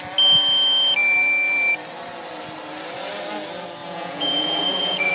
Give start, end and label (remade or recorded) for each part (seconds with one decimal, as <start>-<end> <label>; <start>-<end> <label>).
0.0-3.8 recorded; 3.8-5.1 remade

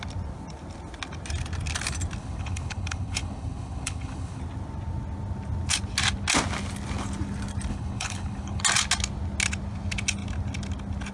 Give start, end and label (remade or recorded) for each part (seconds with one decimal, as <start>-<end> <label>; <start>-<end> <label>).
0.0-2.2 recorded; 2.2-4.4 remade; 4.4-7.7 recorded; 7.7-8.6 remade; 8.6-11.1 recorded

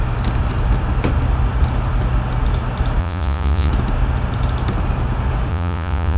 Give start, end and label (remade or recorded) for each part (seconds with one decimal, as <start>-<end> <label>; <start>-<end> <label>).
0.0-3.0 recorded; 3.0-3.7 remade; 3.7-5.5 recorded; 5.5-6.2 remade

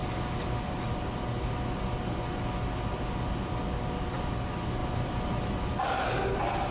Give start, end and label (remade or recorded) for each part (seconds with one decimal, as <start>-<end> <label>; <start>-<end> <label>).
0.0-6.7 recorded

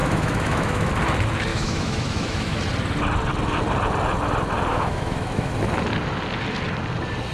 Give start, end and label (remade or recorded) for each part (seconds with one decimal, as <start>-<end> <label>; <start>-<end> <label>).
0.0-0.9 remade; 0.9-1.5 recorded; 1.5-2.6 remade; 2.6-4.7 recorded; 4.7-5.5 remade; 5.5-7.3 recorded

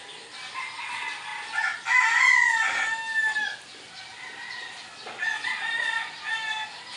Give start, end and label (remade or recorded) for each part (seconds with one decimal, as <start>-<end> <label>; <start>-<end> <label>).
0.0-7.0 recorded

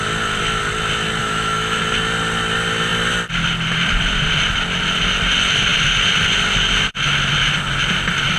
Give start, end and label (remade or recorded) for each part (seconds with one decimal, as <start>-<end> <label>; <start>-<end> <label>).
0.0-1.2 recorded; 1.2-1.8 remade; 1.8-8.4 recorded